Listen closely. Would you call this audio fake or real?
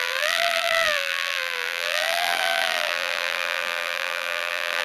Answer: fake